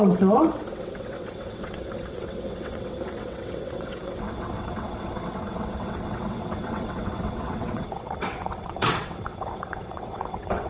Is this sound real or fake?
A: fake